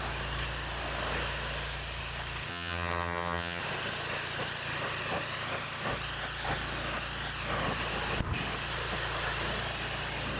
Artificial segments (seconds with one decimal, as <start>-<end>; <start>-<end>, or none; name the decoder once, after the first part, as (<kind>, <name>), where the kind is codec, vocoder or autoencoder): 2.5-3.6 (vocoder, HiFi-GAN)